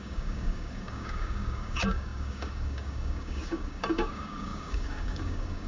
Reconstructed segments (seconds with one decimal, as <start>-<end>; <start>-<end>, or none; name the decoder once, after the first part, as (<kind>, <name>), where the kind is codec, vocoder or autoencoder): 0.0-5.7 (codec, DAC)